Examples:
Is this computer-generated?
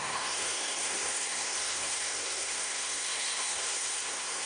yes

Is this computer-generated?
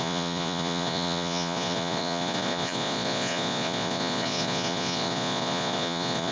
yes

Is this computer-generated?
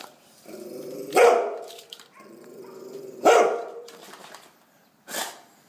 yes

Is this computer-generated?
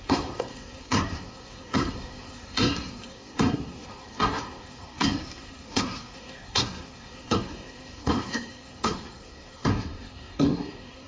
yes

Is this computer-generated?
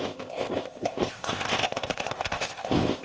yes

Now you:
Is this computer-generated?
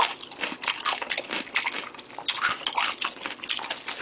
no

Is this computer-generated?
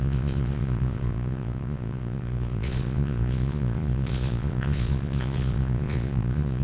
yes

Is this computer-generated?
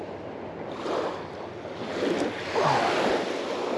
no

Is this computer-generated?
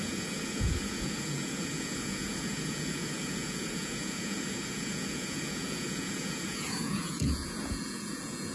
yes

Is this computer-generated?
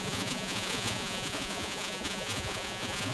yes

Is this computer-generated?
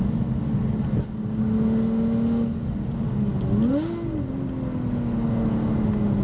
no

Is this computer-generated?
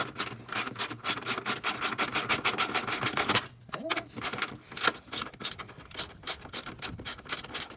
no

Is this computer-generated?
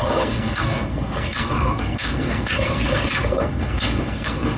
yes